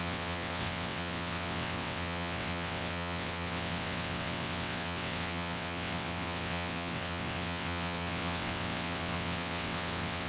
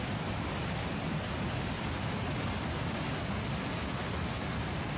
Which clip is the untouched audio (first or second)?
second